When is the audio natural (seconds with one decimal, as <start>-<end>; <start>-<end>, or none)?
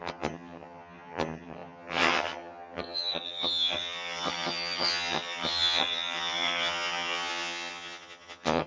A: none